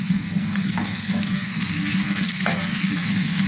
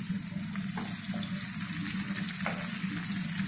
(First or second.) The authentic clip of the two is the second